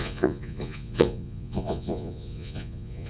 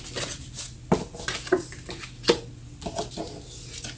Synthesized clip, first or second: first